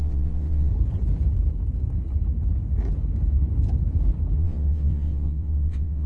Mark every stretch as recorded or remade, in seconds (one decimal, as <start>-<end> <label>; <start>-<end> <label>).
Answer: 0.0-0.7 remade; 0.7-4.4 recorded; 4.4-6.1 remade